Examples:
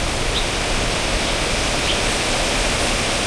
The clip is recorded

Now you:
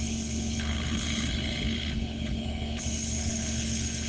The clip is remade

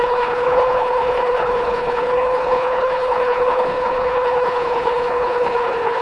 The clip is remade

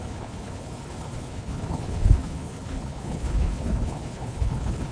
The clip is remade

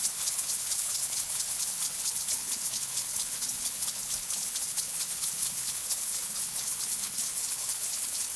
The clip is remade